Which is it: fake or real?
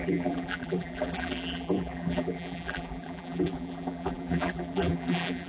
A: fake